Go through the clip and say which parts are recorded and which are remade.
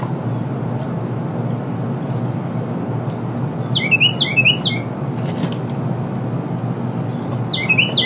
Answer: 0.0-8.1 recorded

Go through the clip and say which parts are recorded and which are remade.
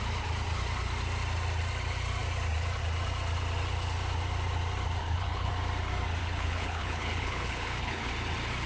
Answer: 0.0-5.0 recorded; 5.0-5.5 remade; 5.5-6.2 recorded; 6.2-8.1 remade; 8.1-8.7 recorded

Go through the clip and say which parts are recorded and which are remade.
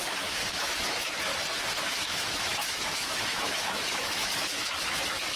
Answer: 0.0-1.3 remade; 1.3-1.8 recorded; 1.8-5.4 remade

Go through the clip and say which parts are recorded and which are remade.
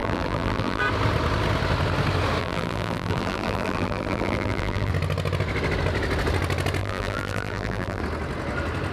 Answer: 0.0-0.8 remade; 0.8-2.4 recorded; 2.4-4.9 remade; 4.9-6.8 recorded; 6.8-8.0 remade; 8.0-8.9 recorded